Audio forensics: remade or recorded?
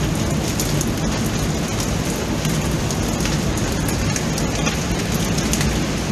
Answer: recorded